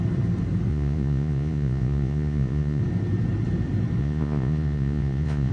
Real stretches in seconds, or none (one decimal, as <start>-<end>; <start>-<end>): 0.0-0.7; 2.8-4.0

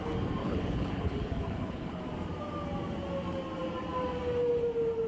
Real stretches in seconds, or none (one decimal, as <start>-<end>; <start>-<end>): 0.0-0.4; 2.0-5.1

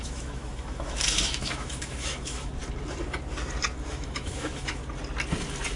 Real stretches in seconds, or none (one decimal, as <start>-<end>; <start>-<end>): 2.5-3.9; 4.8-5.8

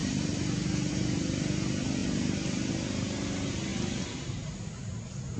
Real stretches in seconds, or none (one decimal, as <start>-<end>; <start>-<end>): 0.0-5.4